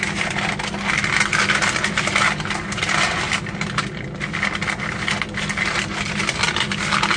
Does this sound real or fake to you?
real